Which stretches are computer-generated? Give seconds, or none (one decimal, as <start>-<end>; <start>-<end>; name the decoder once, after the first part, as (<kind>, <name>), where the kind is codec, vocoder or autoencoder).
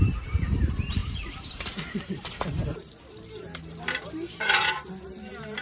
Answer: 0.0-5.6 (vocoder, BigVGAN v2)